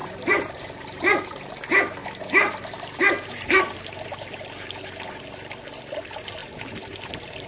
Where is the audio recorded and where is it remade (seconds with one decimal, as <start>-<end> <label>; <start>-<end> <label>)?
0.0-1.3 remade; 1.3-2.0 recorded; 2.0-5.2 remade; 5.2-6.4 recorded; 6.4-7.1 remade; 7.1-7.5 recorded

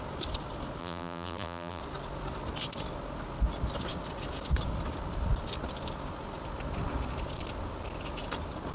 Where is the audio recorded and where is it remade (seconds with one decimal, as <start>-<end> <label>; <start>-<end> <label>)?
0.0-0.8 recorded; 0.8-1.8 remade; 1.8-8.7 recorded

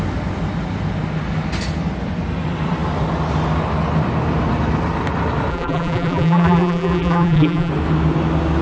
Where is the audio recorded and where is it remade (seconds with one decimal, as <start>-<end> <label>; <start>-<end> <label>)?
0.0-5.5 recorded; 5.5-7.7 remade; 7.7-8.6 recorded